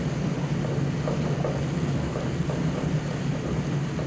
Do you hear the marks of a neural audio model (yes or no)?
no